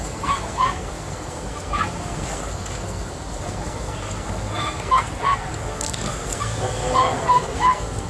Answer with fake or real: fake